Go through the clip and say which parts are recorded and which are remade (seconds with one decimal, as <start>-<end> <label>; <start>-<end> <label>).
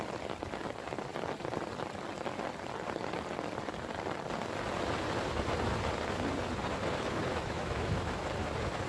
0.0-7.3 recorded; 7.3-8.3 remade; 8.3-8.9 recorded